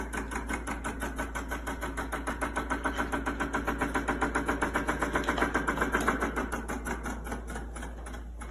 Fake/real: real